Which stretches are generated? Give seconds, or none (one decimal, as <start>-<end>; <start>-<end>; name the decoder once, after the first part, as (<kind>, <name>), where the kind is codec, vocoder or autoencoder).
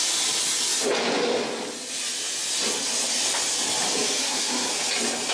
4.2-4.7 (codec, SNAC)